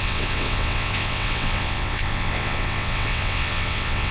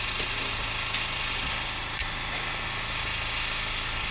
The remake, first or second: first